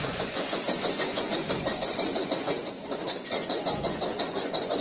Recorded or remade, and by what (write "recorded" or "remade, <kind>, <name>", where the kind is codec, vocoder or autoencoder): remade, vocoder, Vocos